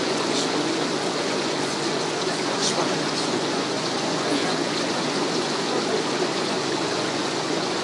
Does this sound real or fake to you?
fake